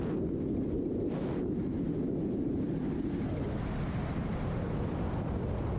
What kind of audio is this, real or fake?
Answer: real